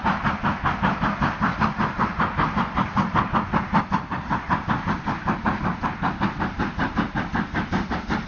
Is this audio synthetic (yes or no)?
no